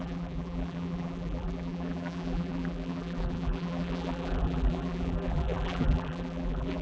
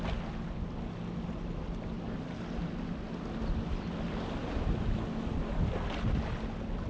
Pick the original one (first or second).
second